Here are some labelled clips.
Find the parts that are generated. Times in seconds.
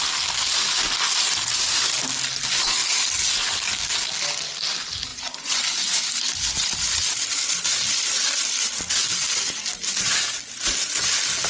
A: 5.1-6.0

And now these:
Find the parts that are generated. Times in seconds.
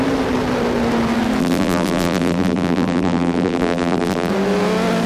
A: 1.4-4.3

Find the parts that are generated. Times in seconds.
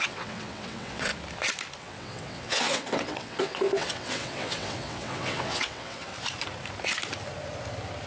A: 0.0-1.1; 1.8-6.1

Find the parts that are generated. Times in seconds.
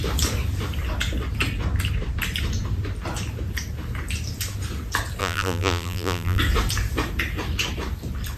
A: 5.2-6.4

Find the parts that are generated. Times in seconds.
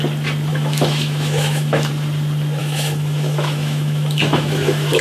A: 0.5-1.9; 2.6-5.0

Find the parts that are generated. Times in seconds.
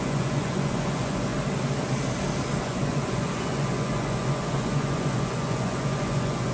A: 0.0-1.3; 2.6-6.5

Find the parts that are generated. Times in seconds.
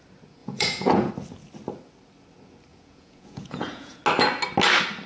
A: 0.4-1.1; 2.7-4.0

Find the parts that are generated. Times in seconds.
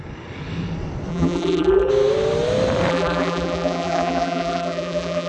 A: 1.1-1.9; 2.9-5.3